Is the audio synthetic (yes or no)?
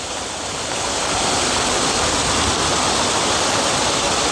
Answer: no